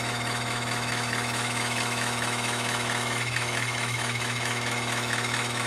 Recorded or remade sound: remade